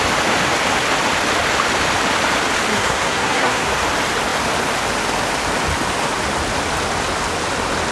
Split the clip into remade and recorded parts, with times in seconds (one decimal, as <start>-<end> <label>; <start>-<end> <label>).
0.0-2.7 recorded; 2.7-3.7 remade; 3.7-7.9 recorded